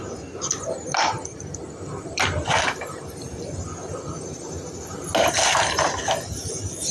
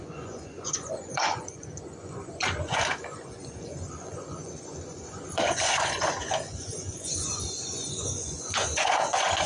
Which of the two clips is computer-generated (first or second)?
second